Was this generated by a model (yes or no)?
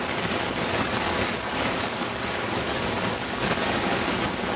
yes